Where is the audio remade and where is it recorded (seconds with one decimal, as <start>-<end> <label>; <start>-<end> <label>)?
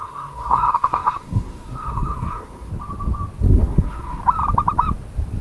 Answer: 0.0-2.7 remade; 2.7-3.4 recorded; 3.4-4.2 remade; 4.2-5.4 recorded